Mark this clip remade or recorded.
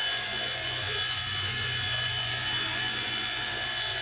remade